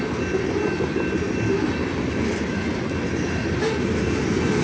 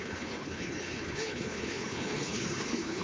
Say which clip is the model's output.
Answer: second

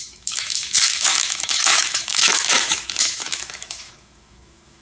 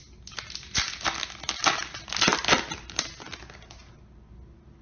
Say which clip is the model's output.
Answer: first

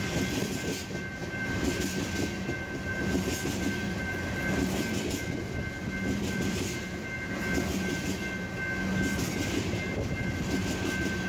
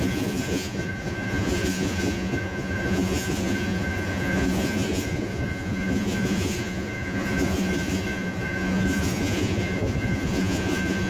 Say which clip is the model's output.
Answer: second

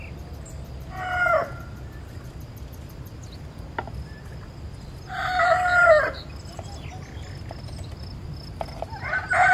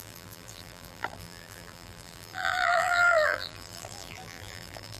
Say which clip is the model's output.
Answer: second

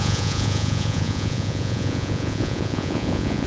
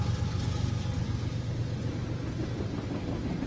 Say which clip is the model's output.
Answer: first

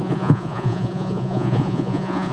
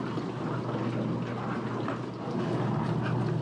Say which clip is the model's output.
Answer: first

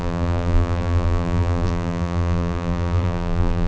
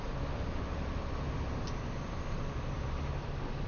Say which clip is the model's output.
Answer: first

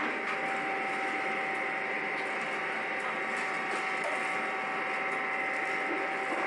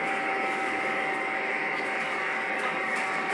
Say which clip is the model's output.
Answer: second